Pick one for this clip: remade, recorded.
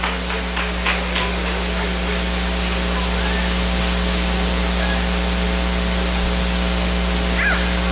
recorded